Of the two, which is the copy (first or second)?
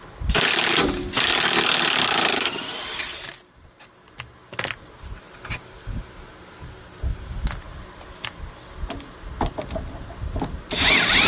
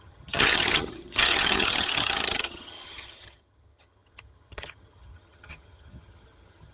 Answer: second